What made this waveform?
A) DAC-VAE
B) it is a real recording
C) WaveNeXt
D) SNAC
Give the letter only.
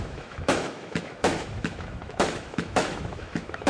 A